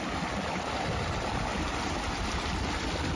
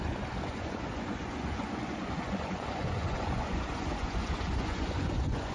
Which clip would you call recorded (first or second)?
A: first